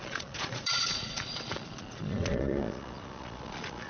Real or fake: fake